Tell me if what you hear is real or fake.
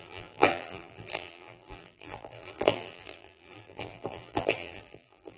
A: fake